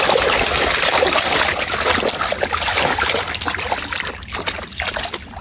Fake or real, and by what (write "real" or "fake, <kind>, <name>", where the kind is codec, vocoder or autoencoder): real